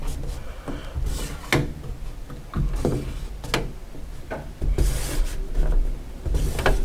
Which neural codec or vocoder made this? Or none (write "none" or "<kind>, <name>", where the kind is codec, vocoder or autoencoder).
none